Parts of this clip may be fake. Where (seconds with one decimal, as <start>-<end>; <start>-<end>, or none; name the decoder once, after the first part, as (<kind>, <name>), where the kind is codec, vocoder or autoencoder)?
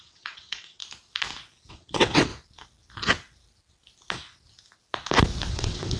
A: 0.0-0.8 (vocoder, WaveNeXt); 1.7-2.3; 5.5-6.0